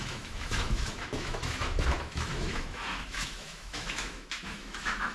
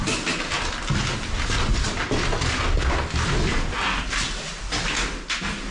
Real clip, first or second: second